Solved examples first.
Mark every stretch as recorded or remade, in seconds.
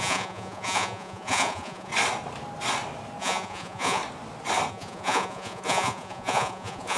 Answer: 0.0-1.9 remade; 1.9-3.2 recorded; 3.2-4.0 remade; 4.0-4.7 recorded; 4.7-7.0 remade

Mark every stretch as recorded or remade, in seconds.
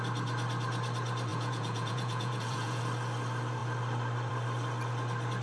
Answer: 0.0-1.3 recorded; 1.3-2.8 remade; 2.8-5.4 recorded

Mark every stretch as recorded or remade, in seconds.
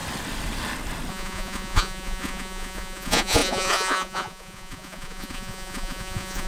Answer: 0.0-1.1 recorded; 1.1-6.5 remade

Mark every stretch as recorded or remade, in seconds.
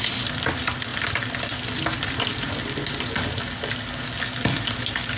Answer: 0.0-5.2 recorded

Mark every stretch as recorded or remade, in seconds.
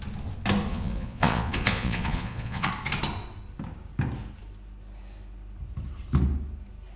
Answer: 0.0-0.7 recorded; 0.7-2.7 remade; 2.7-7.0 recorded